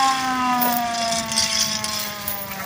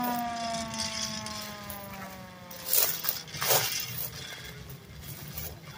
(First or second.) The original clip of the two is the second